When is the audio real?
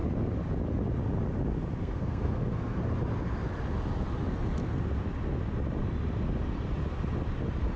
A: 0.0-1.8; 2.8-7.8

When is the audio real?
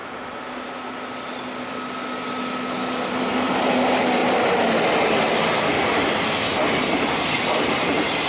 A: 0.0-8.3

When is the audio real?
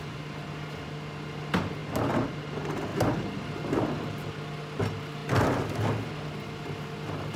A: 0.0-7.4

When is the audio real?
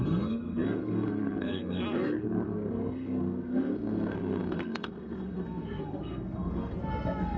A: none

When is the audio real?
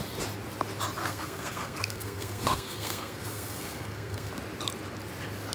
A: 0.0-1.0; 4.3-5.5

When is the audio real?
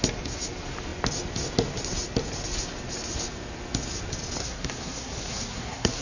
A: 0.0-4.4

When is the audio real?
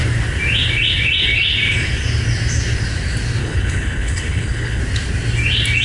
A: 0.0-3.4; 4.8-5.8